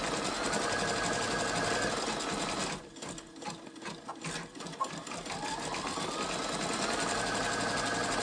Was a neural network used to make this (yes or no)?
no